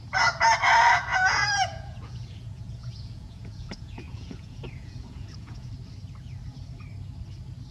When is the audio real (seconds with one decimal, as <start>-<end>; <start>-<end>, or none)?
0.0-1.1; 5.7-7.7